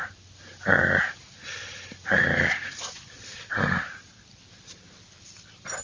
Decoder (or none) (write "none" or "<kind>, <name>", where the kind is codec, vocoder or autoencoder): none